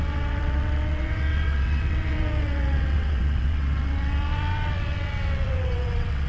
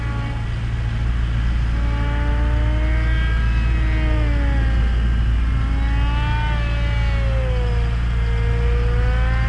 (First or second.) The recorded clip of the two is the second